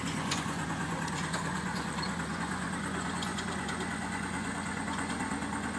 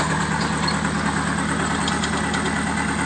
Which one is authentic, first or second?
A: second